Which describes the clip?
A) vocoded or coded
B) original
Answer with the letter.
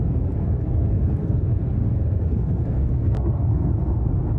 A